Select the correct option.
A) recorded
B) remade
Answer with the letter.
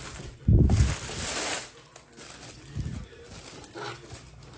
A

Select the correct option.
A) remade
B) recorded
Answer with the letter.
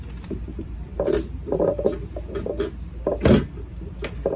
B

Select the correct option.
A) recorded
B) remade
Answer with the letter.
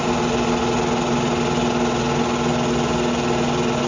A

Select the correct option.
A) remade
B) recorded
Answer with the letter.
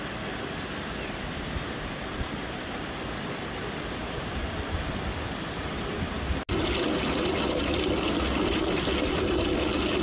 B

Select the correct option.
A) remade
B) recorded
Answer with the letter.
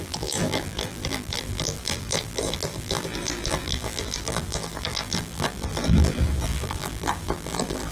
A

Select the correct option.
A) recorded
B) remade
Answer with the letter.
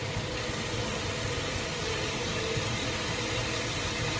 A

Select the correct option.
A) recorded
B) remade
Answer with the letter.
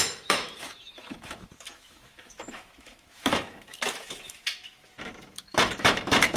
B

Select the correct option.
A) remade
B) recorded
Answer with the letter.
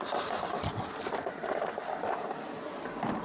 B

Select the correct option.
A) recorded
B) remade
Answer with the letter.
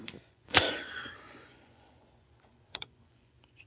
B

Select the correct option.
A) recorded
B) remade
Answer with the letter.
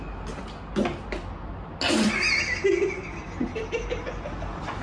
A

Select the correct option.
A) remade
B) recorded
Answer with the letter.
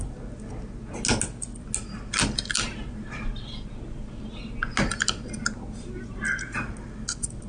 B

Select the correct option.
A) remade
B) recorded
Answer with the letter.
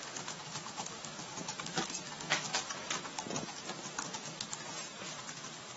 A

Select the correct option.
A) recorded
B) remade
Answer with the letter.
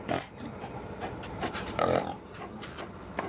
A